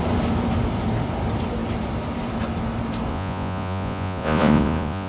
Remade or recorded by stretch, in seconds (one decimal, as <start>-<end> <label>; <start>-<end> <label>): 0.0-3.1 recorded; 3.1-5.1 remade